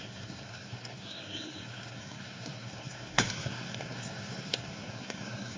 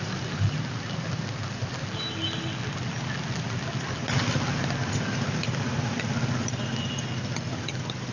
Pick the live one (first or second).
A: second